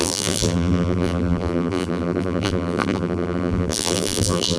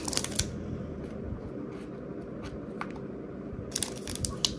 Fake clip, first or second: first